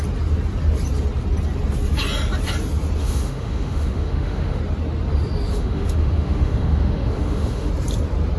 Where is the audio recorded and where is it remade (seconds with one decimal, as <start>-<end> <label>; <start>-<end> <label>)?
0.0-3.0 recorded; 3.0-4.6 remade; 4.6-5.5 recorded; 5.5-7.7 remade; 7.7-8.4 recorded